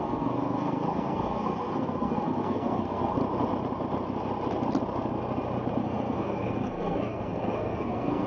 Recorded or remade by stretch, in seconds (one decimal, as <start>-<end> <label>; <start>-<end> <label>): 0.0-3.2 remade; 3.2-5.8 recorded; 5.8-8.3 remade